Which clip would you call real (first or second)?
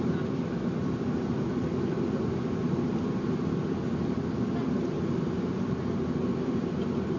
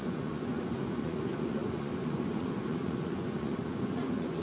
first